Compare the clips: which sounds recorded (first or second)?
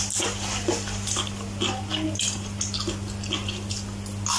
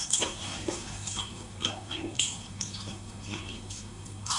first